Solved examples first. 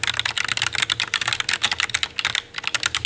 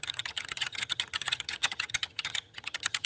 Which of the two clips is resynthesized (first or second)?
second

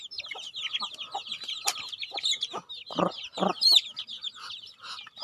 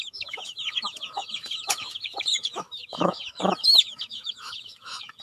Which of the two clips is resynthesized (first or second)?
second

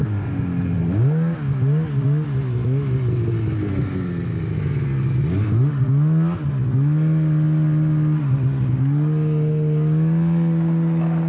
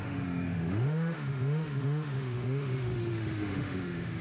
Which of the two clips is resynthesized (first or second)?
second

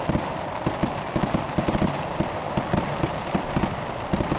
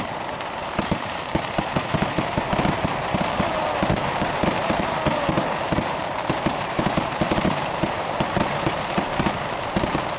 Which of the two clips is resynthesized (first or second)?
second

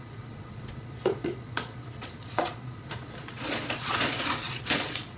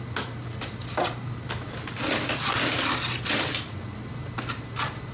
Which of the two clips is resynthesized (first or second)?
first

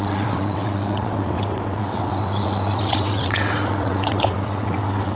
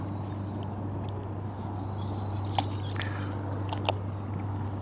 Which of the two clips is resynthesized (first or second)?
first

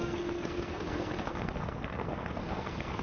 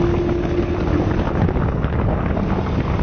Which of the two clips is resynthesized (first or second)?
first